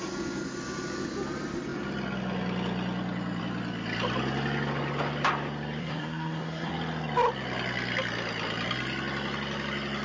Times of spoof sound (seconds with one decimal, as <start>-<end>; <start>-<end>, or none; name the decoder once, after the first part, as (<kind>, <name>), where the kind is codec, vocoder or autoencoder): 5.8-6.7 (codec, SNAC)